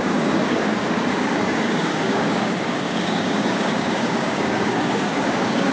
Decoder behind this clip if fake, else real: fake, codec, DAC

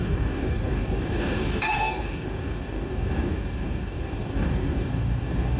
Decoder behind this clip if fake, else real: fake, codec, DAC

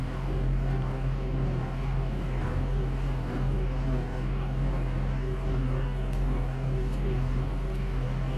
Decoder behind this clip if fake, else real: fake, codec, DAC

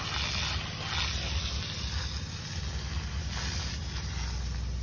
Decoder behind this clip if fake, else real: real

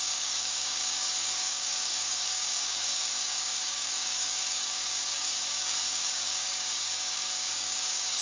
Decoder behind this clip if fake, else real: fake, codec, DAC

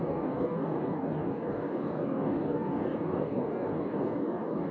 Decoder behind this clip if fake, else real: fake, codec, DAC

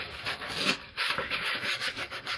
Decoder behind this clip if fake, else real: fake, codec, DAC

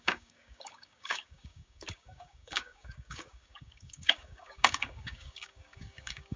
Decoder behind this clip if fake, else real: fake, codec, DAC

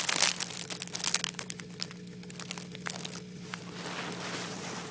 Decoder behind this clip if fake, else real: real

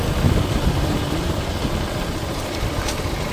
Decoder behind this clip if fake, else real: real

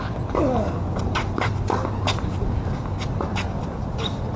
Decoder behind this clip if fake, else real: real